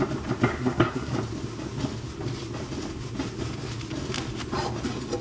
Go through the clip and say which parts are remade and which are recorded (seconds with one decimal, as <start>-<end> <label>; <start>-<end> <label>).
0.0-0.5 recorded; 0.5-1.1 remade; 1.1-5.2 recorded